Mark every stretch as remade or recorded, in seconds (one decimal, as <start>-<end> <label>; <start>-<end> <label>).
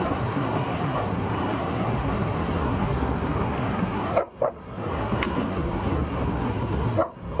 0.0-7.4 remade